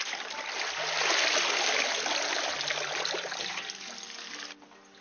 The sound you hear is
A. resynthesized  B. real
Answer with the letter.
B